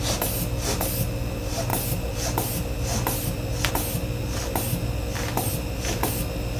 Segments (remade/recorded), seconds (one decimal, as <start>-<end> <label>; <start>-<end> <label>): 0.0-6.6 recorded